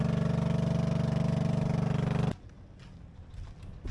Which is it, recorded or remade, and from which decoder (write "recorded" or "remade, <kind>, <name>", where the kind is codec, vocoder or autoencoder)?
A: recorded